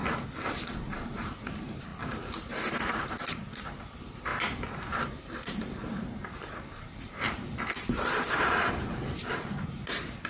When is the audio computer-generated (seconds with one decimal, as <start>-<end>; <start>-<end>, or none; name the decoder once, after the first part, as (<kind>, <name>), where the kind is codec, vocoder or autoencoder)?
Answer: 0.5-10.3 (vocoder, BigVGAN v2)